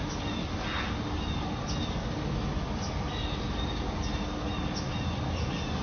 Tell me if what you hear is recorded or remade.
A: recorded